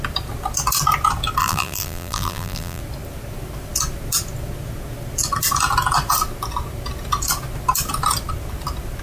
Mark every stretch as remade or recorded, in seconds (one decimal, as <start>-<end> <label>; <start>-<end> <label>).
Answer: 0.0-1.4 recorded; 1.4-2.8 remade; 2.8-9.0 recorded